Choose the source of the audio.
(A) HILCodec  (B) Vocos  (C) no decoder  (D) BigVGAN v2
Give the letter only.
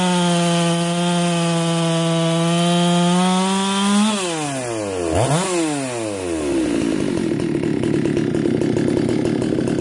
C